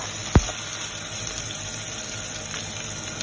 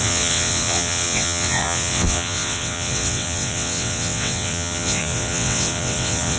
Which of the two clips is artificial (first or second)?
second